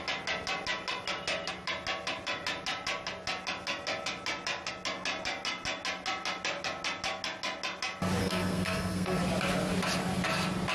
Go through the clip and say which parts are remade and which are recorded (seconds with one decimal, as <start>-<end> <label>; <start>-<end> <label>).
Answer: 0.0-8.2 recorded; 8.2-9.2 remade; 9.2-10.7 recorded